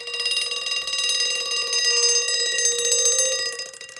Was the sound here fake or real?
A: real